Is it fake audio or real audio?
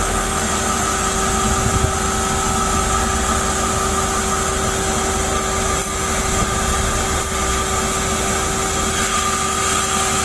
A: real